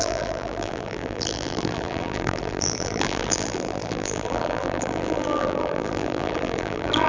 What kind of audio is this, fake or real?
fake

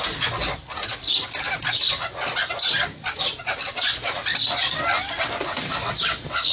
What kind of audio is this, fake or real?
real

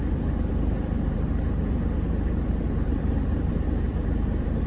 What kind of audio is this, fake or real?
fake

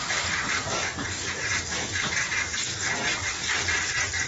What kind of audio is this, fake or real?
real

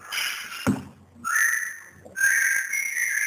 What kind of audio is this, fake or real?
real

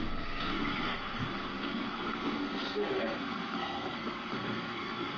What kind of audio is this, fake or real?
fake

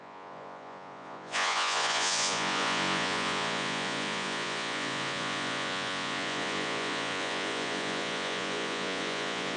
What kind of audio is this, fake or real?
fake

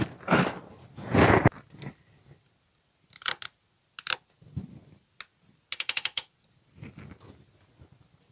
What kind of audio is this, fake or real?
real